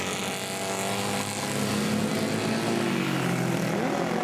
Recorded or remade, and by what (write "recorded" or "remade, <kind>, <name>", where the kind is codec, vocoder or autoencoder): recorded